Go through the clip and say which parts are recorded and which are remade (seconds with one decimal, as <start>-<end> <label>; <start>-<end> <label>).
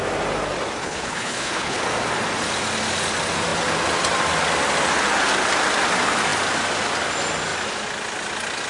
0.0-0.8 recorded; 0.8-1.8 remade; 1.8-8.7 recorded